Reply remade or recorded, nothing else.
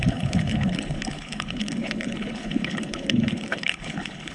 remade